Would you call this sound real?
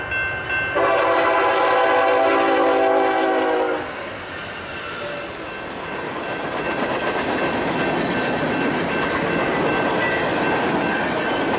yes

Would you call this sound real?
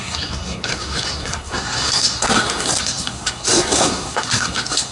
no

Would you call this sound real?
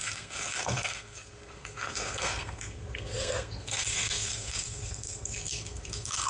no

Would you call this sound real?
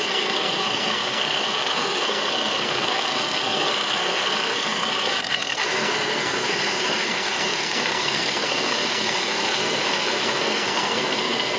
no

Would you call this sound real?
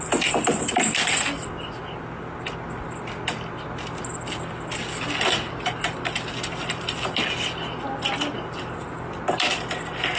yes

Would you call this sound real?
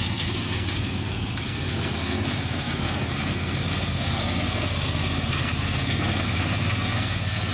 no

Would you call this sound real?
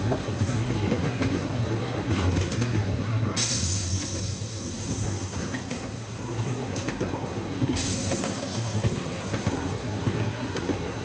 no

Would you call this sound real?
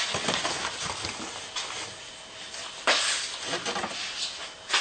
yes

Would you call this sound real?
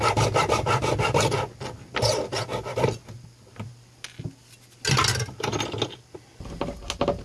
yes